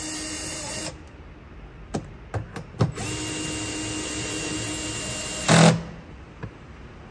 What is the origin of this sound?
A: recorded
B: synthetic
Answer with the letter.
A